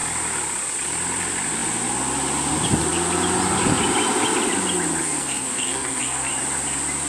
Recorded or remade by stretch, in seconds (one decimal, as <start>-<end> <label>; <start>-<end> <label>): 0.0-5.0 recorded; 5.0-6.3 remade; 6.3-7.1 recorded